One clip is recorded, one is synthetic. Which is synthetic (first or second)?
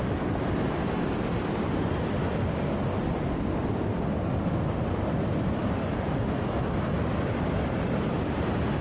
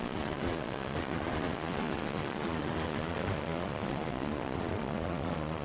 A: second